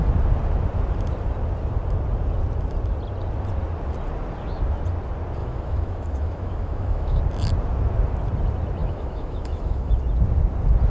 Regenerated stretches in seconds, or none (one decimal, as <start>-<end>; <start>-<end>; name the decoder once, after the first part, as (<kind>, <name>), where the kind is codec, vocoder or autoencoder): 5.4-7.2 (autoencoder, DAC-VAE); 8.8-10.0